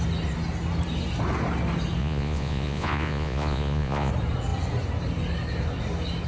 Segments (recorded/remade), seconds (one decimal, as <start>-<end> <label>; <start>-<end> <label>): 0.0-2.0 recorded; 2.0-4.1 remade; 4.1-6.3 recorded